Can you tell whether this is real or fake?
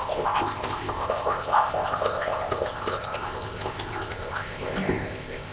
fake